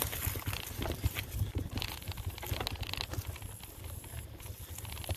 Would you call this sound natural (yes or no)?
yes